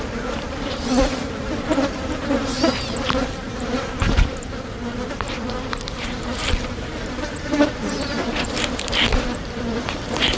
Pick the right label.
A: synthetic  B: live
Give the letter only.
A